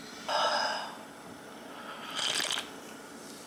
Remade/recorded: recorded